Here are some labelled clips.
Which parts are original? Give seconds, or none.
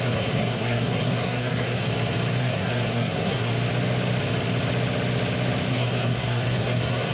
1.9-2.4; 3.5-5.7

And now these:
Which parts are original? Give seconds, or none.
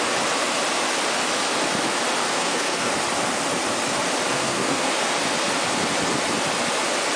0.0-2.3; 2.9-4.3; 4.9-7.2